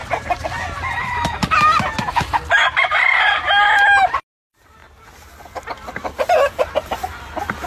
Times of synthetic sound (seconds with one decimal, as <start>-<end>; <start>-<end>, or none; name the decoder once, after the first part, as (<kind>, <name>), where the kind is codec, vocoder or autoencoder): none